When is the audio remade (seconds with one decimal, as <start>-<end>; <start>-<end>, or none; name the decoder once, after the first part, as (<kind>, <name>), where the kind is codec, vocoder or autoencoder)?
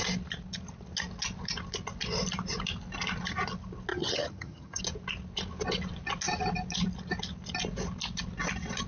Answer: 3.9-4.8 (vocoder, HiFi-GAN)